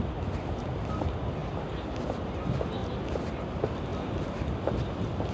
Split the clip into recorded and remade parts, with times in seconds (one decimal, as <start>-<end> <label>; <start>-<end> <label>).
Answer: 0.0-5.3 recorded